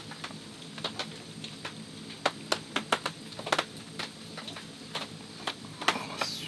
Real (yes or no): yes